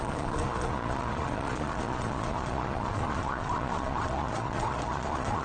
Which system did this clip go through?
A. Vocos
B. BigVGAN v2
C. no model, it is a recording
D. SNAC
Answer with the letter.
A